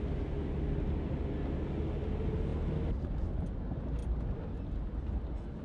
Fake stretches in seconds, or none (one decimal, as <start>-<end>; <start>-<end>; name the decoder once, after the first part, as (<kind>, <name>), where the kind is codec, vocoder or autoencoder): none